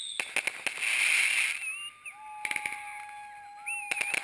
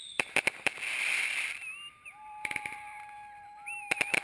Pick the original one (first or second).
first